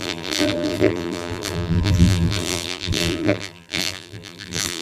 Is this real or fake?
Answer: fake